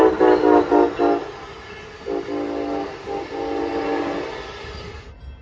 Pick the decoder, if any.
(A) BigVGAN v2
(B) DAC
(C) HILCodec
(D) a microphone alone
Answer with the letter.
D